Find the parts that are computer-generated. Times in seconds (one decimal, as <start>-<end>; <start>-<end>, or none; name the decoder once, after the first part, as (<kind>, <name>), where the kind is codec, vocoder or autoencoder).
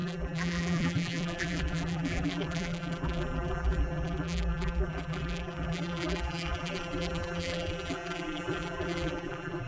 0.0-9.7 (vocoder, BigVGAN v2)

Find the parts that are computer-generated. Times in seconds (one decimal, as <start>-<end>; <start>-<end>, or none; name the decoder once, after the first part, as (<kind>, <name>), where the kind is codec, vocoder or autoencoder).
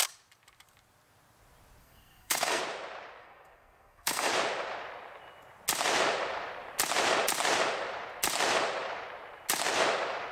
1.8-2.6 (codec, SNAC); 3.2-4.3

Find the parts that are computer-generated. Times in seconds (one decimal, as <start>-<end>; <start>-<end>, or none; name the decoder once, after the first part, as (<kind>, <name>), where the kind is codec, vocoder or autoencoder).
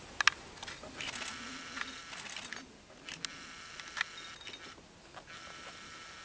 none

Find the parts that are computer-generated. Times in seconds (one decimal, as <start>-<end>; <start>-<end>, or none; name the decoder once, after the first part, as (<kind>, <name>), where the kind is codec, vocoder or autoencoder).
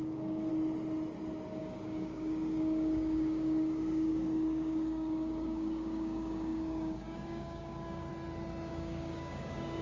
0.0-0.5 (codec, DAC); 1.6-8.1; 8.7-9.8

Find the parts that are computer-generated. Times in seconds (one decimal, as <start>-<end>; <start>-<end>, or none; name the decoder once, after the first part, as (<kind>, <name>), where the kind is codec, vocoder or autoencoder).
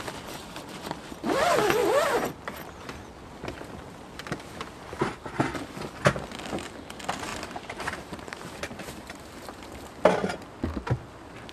7.3-9.7 (vocoder, BigVGAN v2)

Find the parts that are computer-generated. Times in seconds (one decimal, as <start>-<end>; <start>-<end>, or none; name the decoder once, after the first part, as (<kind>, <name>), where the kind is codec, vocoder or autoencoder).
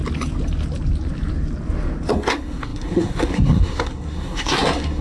2.1-5.0 (codec, SNAC)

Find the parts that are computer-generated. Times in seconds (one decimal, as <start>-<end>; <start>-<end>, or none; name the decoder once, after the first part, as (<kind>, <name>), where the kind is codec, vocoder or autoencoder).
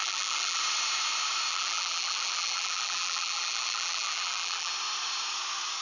0.0-0.6 (vocoder, BigVGAN v2); 1.5-4.7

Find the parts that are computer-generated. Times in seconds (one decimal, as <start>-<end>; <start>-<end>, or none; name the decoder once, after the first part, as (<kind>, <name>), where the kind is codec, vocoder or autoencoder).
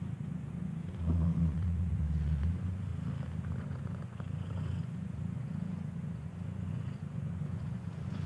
0.0-2.9 (vocoder, Vocos); 3.6-8.3